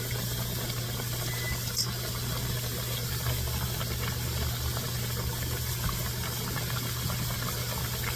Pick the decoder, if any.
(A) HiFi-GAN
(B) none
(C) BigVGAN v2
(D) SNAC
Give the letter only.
B